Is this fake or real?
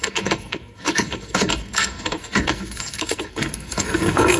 fake